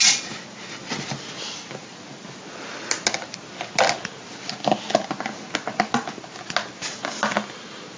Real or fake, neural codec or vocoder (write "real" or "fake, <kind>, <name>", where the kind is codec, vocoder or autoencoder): real